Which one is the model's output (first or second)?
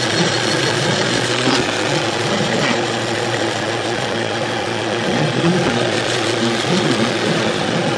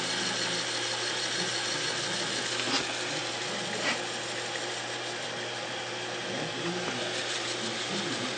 first